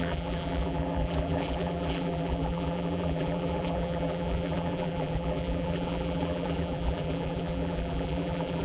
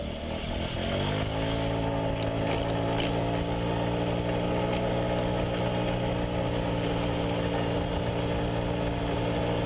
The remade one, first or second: first